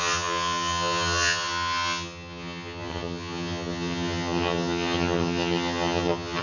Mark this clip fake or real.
fake